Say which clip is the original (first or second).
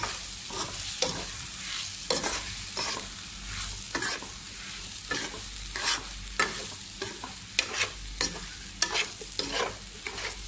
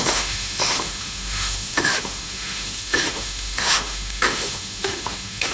first